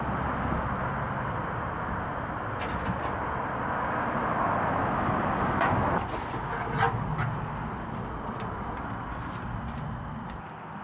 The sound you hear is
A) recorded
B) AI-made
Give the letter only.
A